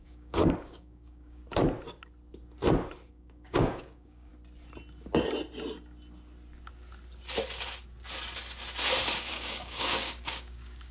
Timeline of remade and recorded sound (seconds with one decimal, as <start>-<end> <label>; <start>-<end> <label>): 0.0-1.4 remade; 1.4-3.1 recorded; 3.1-4.3 remade; 4.3-9.3 recorded; 9.3-10.9 remade